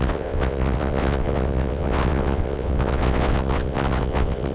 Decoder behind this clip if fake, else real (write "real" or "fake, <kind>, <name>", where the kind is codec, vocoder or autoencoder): fake, vocoder, WaveNeXt